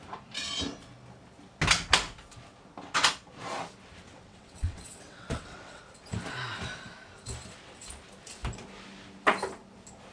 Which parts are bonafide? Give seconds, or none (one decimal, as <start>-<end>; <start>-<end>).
0.0-4.1; 5.8-10.1